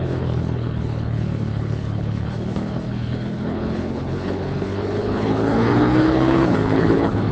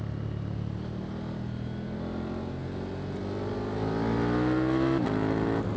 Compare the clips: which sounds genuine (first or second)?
second